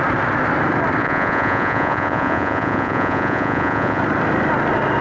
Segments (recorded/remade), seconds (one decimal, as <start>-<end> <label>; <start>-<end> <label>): 0.0-1.0 recorded; 1.0-4.0 remade; 4.0-5.0 recorded